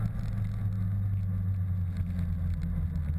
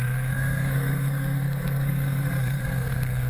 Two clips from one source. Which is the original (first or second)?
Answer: first